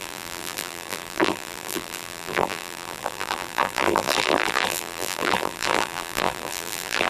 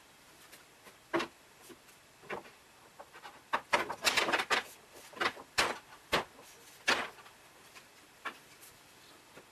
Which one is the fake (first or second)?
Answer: first